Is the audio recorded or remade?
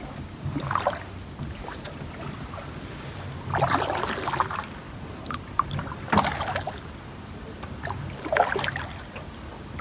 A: recorded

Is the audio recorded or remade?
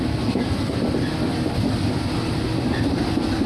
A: recorded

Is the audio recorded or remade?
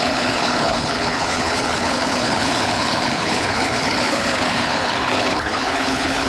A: remade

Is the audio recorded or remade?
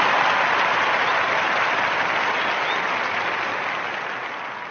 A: recorded